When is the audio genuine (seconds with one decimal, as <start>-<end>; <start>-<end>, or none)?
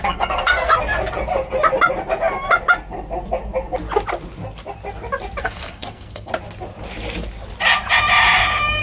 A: 0.7-5.4; 6.3-8.8